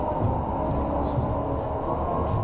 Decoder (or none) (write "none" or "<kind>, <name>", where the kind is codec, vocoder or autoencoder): none